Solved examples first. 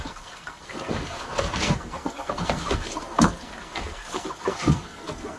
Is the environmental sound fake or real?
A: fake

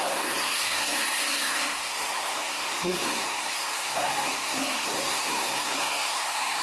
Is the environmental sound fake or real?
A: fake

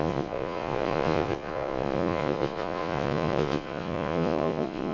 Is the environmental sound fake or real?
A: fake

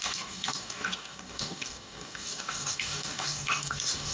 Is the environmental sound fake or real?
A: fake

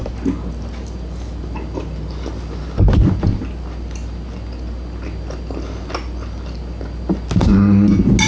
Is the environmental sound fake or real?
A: real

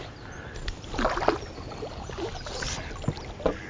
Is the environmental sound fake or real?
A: real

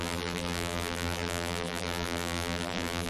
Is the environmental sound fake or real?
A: fake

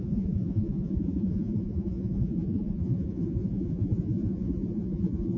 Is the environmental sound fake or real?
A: fake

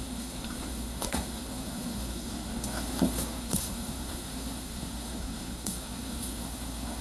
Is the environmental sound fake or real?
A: fake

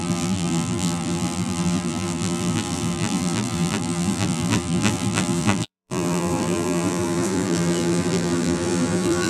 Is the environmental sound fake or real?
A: fake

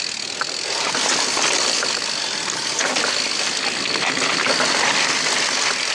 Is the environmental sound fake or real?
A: real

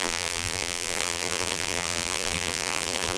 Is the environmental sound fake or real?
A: fake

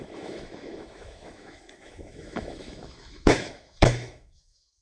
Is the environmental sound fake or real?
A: fake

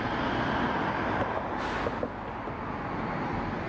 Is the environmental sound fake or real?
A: real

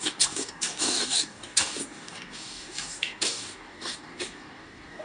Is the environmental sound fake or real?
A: fake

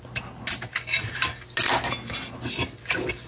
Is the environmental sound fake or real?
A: real